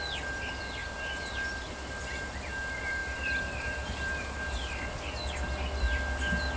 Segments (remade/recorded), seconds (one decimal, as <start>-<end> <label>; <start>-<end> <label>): 0.0-0.8 recorded; 0.8-1.9 remade; 1.9-3.0 recorded; 3.0-5.1 remade; 5.1-6.6 recorded